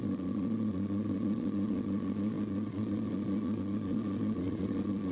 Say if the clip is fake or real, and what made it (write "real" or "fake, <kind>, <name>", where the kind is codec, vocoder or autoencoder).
fake, vocoder, Vocos